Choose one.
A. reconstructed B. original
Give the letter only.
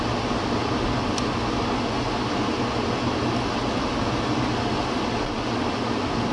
B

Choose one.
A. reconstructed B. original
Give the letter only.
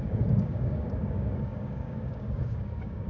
A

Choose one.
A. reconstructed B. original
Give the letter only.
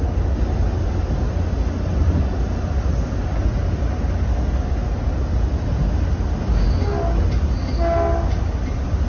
B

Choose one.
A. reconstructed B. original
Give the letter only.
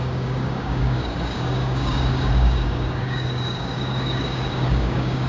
A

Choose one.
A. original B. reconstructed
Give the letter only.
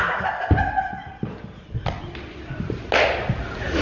A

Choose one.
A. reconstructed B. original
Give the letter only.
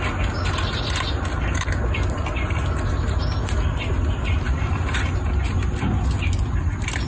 B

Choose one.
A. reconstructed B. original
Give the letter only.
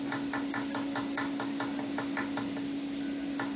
B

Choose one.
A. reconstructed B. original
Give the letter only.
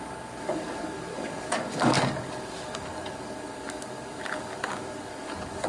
A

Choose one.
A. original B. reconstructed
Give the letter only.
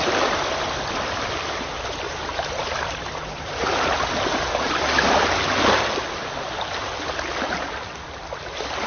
A